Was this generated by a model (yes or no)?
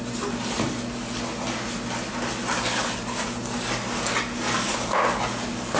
no